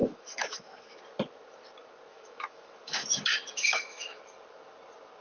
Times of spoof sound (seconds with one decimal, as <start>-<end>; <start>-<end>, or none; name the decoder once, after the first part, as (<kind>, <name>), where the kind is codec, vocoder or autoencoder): 0.0-1.0 (autoencoder, DAC-VAE); 2.1-4.2